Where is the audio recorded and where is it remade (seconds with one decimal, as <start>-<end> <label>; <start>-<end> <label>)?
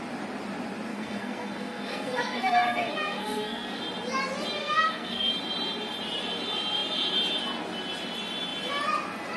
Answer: 0.0-0.9 recorded; 0.9-3.8 remade; 3.8-4.6 recorded; 4.6-5.3 remade; 5.3-9.4 recorded